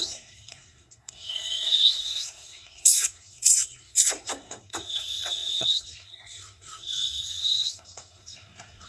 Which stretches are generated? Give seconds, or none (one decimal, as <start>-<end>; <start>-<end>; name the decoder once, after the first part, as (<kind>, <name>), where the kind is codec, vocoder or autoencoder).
0.0-8.9 (codec, SNAC)

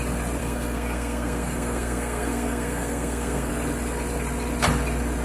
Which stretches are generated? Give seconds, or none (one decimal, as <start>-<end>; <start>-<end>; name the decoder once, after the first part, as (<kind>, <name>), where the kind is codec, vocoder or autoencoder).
0.4-3.5 (codec, SNAC)

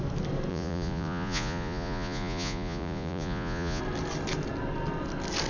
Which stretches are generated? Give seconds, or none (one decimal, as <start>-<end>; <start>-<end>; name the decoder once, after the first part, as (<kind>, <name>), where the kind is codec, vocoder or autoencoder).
0.5-3.8 (vocoder, Vocos)

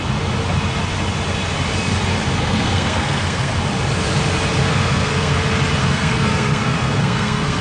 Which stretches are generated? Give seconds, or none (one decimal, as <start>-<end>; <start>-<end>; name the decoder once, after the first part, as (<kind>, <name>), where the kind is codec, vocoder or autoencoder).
2.3-3.5 (codec, SNAC); 4.6-5.3; 5.8-7.6